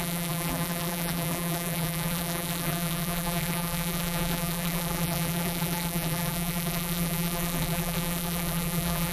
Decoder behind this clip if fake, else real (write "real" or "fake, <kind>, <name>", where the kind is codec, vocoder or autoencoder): fake, vocoder, BigVGAN v2